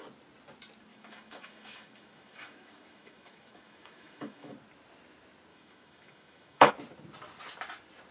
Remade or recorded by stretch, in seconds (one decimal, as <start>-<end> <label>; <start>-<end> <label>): 0.0-0.9 recorded; 0.9-4.5 remade; 4.5-5.5 recorded; 5.5-6.7 remade; 6.7-8.1 recorded